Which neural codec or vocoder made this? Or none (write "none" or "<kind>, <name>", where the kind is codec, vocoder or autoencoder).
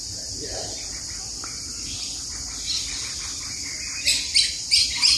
none